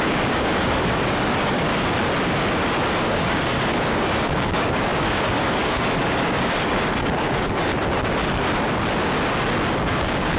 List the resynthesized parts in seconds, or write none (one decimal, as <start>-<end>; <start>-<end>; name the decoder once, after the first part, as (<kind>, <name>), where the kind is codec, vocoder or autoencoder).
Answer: 0.0-1.7 (codec, DAC); 3.0-7.7; 9.9-10.4

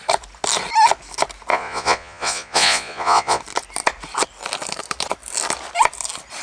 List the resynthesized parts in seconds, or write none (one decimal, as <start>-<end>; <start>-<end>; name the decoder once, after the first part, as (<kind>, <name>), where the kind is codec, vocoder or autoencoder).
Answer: 1.5-3.4 (vocoder, Vocos)

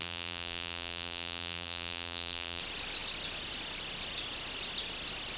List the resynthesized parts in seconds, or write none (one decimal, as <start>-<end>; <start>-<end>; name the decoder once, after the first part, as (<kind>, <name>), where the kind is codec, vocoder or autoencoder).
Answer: 0.0-2.6 (vocoder, BigVGAN v2)